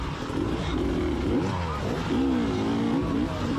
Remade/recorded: recorded